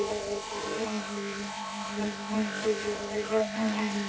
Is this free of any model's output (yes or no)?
no